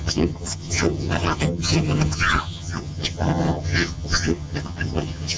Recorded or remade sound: remade